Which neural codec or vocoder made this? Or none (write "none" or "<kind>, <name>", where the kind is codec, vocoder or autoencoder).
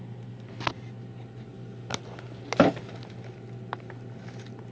none